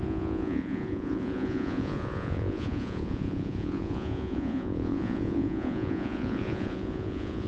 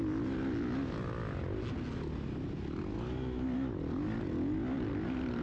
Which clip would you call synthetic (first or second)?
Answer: first